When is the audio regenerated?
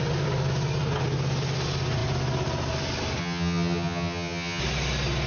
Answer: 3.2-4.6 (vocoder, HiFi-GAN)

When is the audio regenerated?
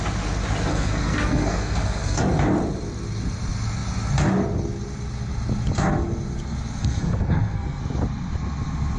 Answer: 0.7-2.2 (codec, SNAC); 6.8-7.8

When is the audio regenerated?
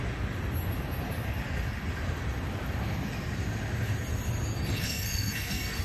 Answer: 4.7-5.8 (codec, SNAC)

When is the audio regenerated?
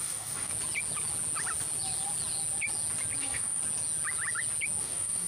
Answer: 0.0-0.5 (codec, DAC); 3.2-3.6; 4.8-5.3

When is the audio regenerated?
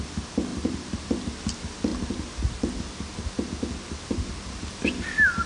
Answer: 0.5-1.0 (vocoder, BigVGAN v2)